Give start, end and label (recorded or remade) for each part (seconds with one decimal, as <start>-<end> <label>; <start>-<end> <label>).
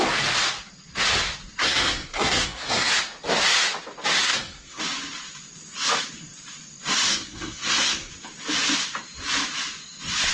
0.0-1.6 recorded; 1.6-2.9 remade; 2.9-4.2 recorded; 4.2-4.8 remade; 4.8-7.1 recorded; 7.1-8.1 remade; 8.1-10.3 recorded